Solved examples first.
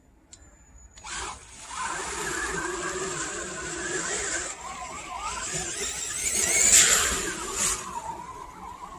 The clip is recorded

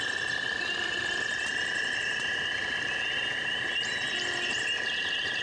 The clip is recorded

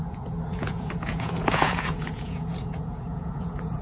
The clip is remade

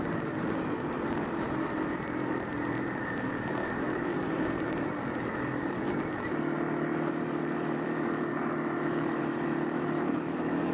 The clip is remade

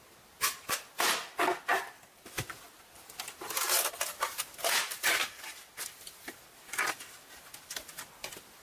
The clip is recorded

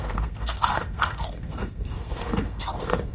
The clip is remade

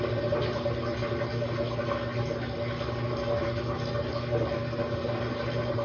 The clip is recorded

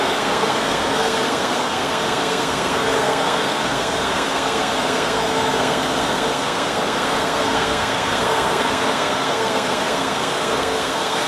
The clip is remade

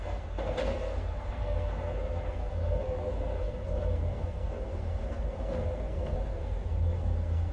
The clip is remade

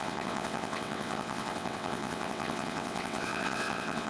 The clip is remade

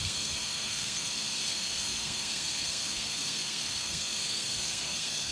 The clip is remade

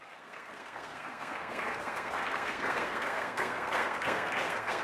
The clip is remade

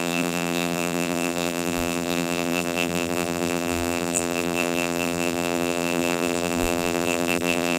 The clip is remade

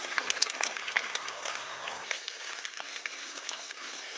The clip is remade